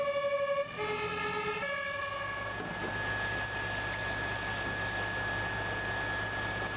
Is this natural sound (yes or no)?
yes